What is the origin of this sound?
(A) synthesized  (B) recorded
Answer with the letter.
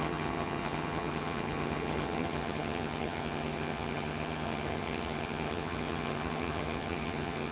A